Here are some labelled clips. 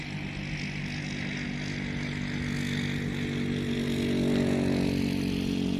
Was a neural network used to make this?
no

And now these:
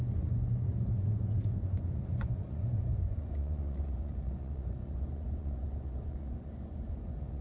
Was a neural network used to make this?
yes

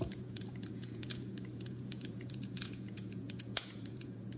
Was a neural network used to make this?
yes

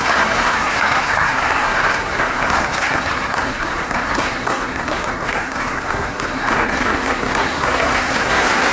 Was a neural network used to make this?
yes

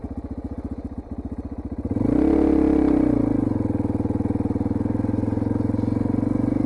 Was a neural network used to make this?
no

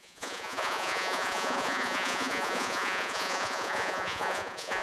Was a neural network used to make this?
yes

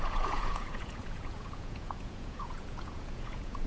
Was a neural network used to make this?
yes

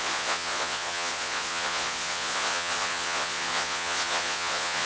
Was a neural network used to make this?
yes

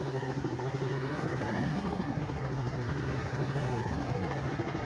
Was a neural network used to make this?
yes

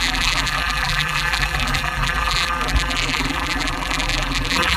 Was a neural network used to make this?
yes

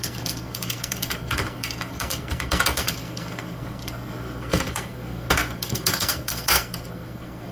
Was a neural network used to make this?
yes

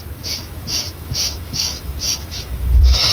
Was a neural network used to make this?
yes